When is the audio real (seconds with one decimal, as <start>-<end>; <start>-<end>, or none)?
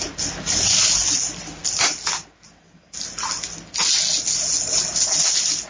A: 0.0-5.7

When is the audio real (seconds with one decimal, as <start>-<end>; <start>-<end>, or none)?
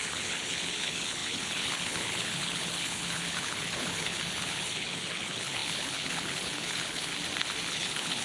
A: 7.1-7.7